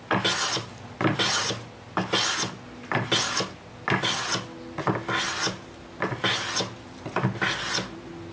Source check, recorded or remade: recorded